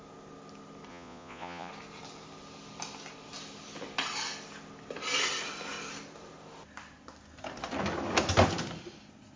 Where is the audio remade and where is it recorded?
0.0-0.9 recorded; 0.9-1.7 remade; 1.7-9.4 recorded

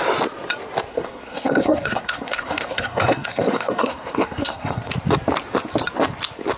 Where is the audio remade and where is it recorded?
0.0-0.9 recorded; 0.9-4.9 remade; 4.9-6.6 recorded

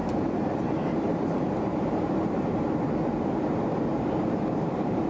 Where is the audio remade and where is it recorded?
0.0-2.6 remade; 2.6-3.9 recorded; 3.9-5.1 remade

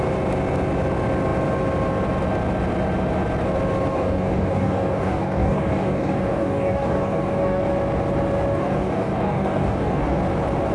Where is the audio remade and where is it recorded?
0.0-3.9 recorded; 3.9-7.7 remade; 7.7-8.5 recorded; 8.5-10.2 remade; 10.2-10.7 recorded

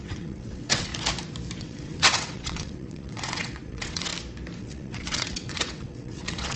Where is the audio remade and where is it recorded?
0.0-0.9 remade; 0.9-1.6 recorded; 1.6-4.1 remade; 4.1-4.6 recorded; 4.6-6.6 remade

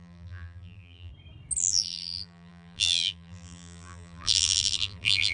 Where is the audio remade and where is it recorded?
0.0-1.1 remade; 1.1-1.6 recorded; 1.6-5.3 remade

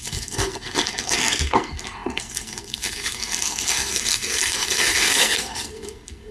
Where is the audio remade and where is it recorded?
0.0-6.3 remade

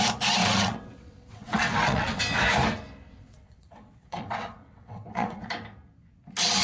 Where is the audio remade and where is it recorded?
0.0-0.4 recorded; 0.4-2.2 remade; 2.2-3.1 recorded; 3.1-5.5 remade; 5.5-6.6 recorded